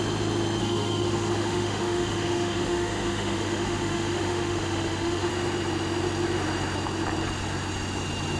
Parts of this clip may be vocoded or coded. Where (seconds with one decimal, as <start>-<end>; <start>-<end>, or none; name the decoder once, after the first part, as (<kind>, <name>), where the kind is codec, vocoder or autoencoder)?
0.6-5.3 (autoencoder, DAC-VAE)